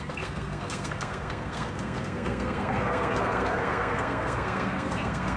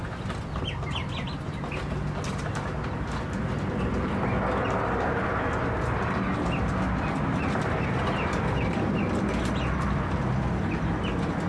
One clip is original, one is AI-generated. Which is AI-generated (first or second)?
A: first